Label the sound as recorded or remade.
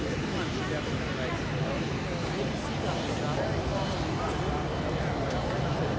recorded